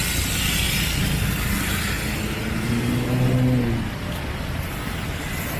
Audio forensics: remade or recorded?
recorded